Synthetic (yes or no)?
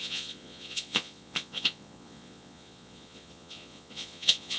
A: yes